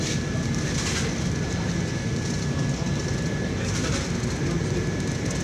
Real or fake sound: real